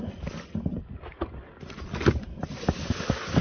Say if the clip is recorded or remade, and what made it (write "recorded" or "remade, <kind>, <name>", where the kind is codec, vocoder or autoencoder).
recorded